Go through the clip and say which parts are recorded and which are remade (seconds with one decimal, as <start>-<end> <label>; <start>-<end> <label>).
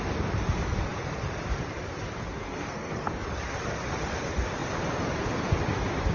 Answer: 0.0-2.4 recorded; 2.4-3.1 remade; 3.1-6.1 recorded